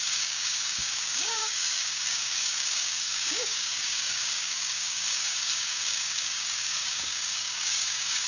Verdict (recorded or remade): remade